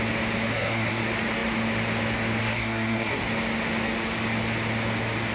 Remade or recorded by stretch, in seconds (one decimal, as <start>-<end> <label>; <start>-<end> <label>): 0.0-0.5 recorded; 0.5-1.0 remade; 1.0-2.4 recorded; 2.4-3.2 remade; 3.2-5.3 recorded